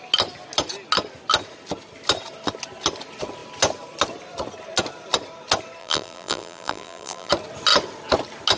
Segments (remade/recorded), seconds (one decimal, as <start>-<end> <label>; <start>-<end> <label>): 0.0-5.8 recorded; 5.8-7.3 remade; 7.3-8.6 recorded